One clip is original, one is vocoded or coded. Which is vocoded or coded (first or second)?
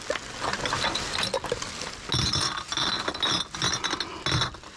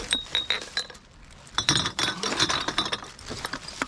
second